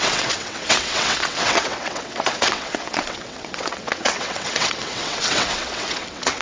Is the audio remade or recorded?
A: remade